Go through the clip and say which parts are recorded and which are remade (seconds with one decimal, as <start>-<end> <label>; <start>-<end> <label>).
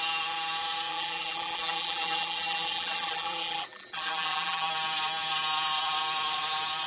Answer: 0.0-0.9 recorded; 0.9-4.7 remade; 4.7-6.9 recorded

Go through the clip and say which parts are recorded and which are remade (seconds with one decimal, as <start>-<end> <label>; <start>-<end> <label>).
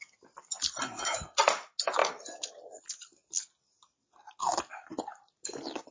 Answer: 0.0-2.0 recorded; 2.0-2.8 remade; 2.8-5.9 recorded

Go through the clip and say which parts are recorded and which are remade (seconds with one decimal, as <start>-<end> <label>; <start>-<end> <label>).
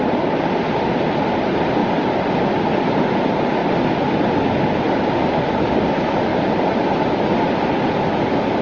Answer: 0.0-1.8 recorded; 1.8-3.1 remade; 3.1-3.6 recorded; 3.6-4.9 remade; 4.9-6.3 recorded; 6.3-7.0 remade; 7.0-8.6 recorded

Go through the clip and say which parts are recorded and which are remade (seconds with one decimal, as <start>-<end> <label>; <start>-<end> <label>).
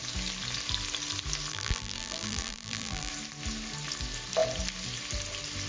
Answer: 0.0-1.5 recorded; 1.5-3.1 remade; 3.1-5.7 recorded